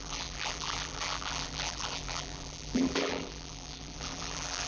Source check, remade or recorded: remade